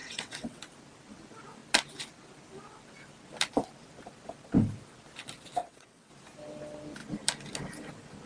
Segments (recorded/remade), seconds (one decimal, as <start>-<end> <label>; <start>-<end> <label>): 0.0-0.6 remade; 0.6-5.6 recorded; 5.6-6.1 remade; 6.1-8.3 recorded